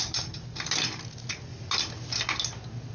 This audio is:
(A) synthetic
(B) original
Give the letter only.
B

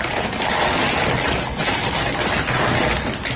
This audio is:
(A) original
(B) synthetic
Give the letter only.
A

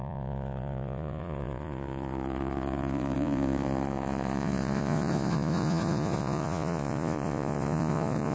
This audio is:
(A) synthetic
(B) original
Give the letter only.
A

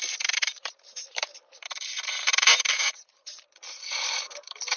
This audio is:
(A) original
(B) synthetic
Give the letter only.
B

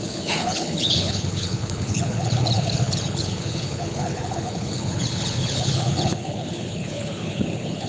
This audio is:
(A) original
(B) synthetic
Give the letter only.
B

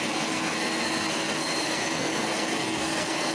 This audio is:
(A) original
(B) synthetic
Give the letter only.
B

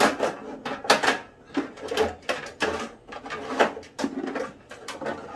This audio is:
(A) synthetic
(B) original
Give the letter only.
B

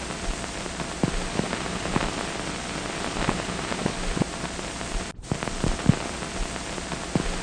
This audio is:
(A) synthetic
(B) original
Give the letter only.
B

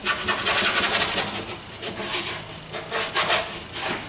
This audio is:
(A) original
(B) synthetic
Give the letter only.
A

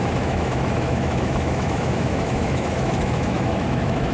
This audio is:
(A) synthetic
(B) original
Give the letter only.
A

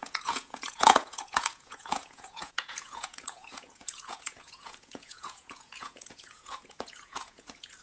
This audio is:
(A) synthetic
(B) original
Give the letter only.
A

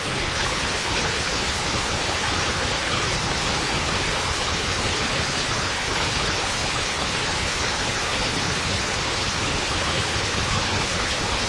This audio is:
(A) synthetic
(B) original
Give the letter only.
A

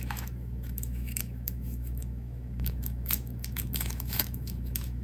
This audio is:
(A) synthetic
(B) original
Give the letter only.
A